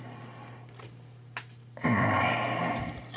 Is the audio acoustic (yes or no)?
yes